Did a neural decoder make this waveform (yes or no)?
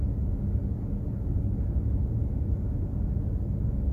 no